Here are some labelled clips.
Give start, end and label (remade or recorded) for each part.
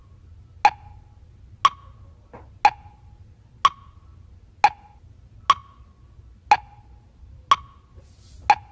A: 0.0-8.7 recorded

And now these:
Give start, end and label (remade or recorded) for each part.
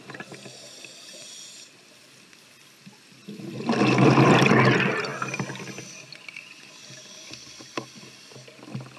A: 0.0-9.0 recorded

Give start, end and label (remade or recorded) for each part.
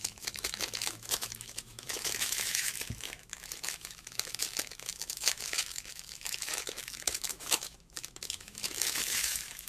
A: 0.0-9.7 remade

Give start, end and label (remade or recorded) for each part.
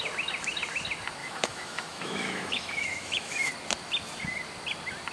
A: 0.0-1.2 recorded; 1.2-3.5 remade; 3.5-5.1 recorded